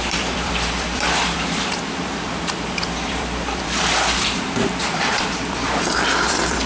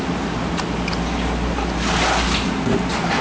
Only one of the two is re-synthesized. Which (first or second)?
first